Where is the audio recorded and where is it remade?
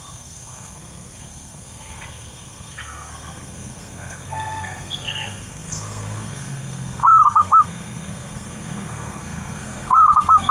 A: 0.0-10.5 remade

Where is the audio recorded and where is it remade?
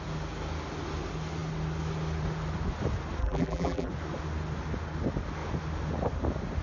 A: 0.0-3.2 recorded; 3.2-3.9 remade; 3.9-6.6 recorded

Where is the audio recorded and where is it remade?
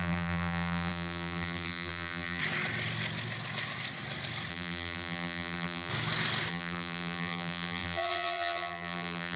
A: 0.0-2.4 remade; 2.4-4.5 recorded; 4.5-5.9 remade; 5.9-6.5 recorded; 6.5-9.4 remade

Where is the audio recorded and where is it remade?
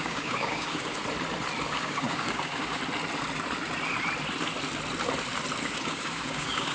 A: 0.0-1.0 remade; 1.0-1.7 recorded; 1.7-2.8 remade; 2.8-5.6 recorded; 5.6-6.7 remade